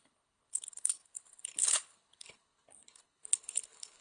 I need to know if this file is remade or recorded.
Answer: remade